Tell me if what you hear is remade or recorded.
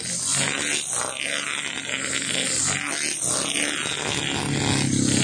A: recorded